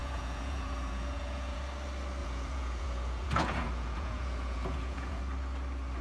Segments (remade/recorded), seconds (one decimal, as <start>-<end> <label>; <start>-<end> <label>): 0.0-1.6 remade; 1.6-2.2 recorded; 2.2-5.2 remade; 5.2-6.0 recorded